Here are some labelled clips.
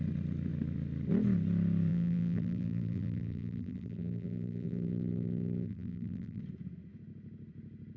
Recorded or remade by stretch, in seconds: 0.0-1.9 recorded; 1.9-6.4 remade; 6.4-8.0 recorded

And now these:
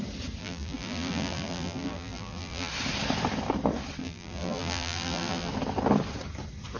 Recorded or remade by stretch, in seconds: 0.0-0.4 recorded; 0.4-2.7 remade; 2.7-4.0 recorded; 4.0-5.5 remade; 5.5-6.8 recorded

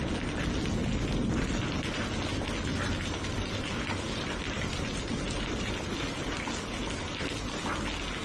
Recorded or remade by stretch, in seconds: 0.0-2.3 recorded; 2.3-6.0 remade; 6.0-8.2 recorded

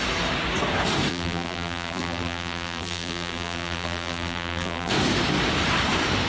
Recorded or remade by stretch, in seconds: 0.0-1.1 recorded; 1.1-4.9 remade; 4.9-6.3 recorded

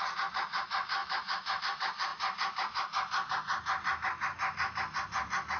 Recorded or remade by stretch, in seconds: 0.0-2.1 remade; 2.1-5.6 recorded